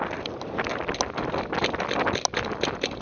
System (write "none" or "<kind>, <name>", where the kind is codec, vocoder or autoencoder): none